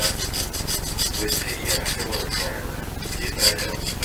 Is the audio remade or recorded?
recorded